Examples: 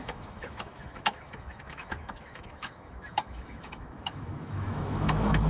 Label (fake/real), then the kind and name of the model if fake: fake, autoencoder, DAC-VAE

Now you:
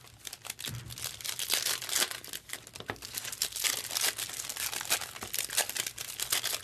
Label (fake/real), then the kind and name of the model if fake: real